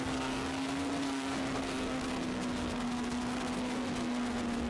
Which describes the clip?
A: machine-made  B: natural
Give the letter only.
A